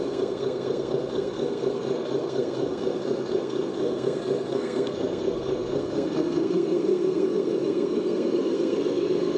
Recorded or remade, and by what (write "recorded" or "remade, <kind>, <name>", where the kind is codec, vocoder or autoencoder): remade, codec, SNAC